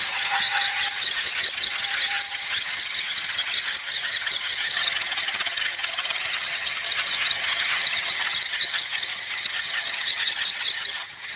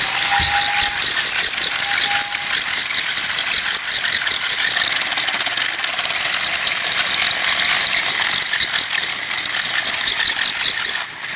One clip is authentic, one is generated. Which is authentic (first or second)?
second